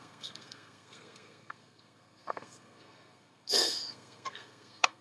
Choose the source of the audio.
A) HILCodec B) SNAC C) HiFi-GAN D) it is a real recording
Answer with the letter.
B